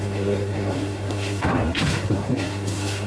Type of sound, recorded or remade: remade